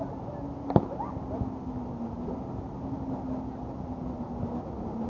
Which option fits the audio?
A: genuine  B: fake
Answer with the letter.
A